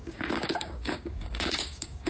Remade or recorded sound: remade